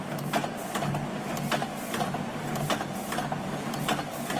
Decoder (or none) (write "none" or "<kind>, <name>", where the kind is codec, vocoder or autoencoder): none